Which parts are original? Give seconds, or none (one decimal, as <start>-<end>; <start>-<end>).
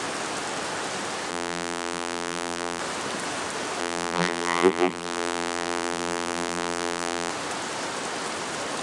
0.0-1.3; 2.8-3.8; 7.3-8.8